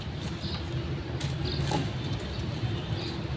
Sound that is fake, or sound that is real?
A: real